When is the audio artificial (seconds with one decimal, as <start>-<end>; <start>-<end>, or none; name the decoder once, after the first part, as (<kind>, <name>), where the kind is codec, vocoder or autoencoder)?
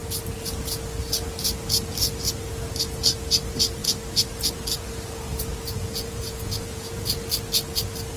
5.3-7.2 (vocoder, Vocos)